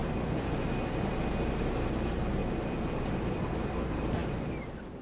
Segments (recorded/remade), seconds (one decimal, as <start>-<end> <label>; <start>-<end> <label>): 0.0-1.6 recorded; 1.6-2.4 remade; 2.4-3.0 recorded; 3.0-5.0 remade